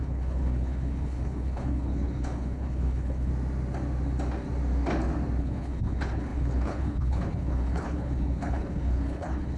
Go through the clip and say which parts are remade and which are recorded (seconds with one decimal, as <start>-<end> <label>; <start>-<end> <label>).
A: 0.0-3.3 remade; 3.3-5.4 recorded; 5.4-9.6 remade